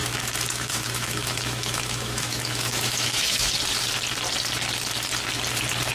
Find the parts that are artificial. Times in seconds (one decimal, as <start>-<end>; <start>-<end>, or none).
0.0-3.5

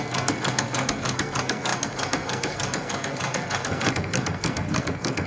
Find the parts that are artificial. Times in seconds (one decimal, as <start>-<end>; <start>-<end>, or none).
0.0-5.3

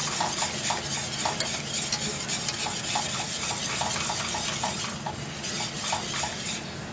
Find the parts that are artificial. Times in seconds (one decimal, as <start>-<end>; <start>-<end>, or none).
none

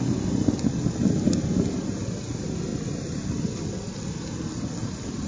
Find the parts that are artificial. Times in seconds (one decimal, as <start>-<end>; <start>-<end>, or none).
none

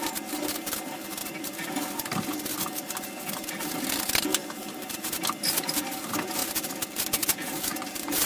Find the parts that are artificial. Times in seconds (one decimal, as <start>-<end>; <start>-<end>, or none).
1.2-1.7; 4.4-5.1